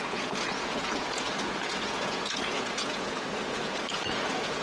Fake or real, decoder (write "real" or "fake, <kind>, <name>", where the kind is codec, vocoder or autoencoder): fake, vocoder, Vocos